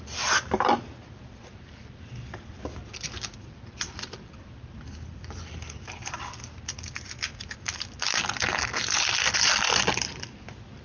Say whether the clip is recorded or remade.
remade